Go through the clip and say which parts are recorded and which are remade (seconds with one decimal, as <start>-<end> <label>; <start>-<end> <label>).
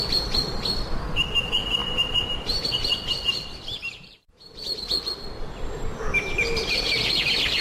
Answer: 0.0-1.8 recorded; 1.8-2.7 remade; 2.7-3.8 recorded; 3.8-4.5 remade; 4.5-7.6 recorded